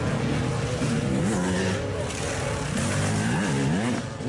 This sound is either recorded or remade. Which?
recorded